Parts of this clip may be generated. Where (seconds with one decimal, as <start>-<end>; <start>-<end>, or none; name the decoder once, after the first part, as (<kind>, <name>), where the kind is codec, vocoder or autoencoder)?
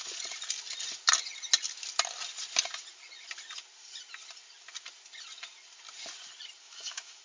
6.6-7.2 (autoencoder, DAC-VAE)